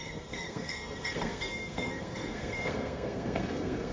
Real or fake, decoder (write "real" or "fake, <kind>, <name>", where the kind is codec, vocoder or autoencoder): fake, codec, SNAC